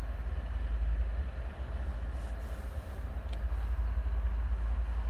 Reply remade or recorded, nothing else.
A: recorded